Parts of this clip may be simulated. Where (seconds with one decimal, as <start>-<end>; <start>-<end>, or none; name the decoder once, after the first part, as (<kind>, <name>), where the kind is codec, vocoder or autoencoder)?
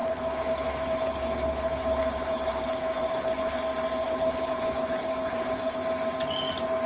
0.0-3.6 (codec, HILCodec); 4.0-5.8